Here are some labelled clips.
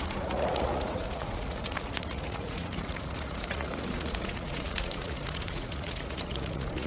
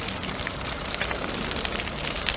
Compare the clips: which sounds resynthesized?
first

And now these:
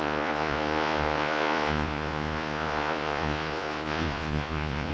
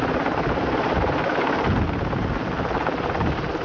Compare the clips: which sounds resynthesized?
first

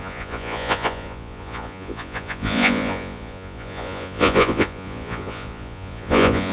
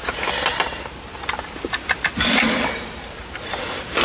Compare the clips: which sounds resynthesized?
first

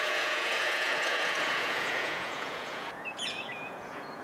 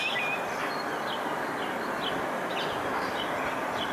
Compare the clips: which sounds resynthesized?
first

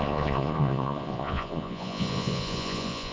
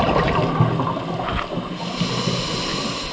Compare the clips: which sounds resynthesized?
first